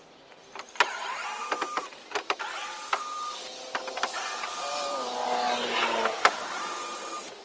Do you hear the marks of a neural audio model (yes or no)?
no